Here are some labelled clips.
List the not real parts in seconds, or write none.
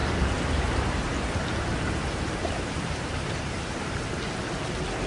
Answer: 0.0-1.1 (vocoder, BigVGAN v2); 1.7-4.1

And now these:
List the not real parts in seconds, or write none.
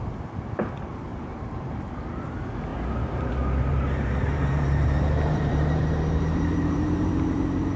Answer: 1.1-1.9 (vocoder, BigVGAN v2); 2.7-3.3; 3.7-7.8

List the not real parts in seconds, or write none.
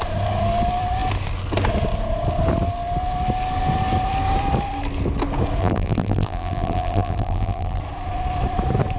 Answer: 5.6-7.8 (vocoder, BigVGAN v2)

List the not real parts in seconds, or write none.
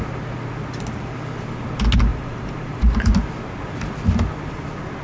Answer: 2.1-3.1 (vocoder, BigVGAN v2)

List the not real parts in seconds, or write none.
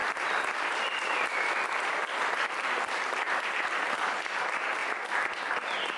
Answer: 0.0-3.1 (vocoder, BigVGAN v2)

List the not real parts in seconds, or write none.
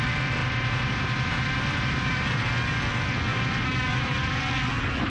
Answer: 0.4-2.5 (vocoder, BigVGAN v2); 3.3-4.3